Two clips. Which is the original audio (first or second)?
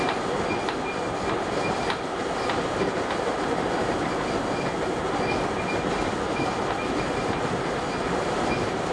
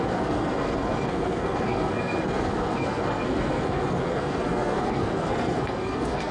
first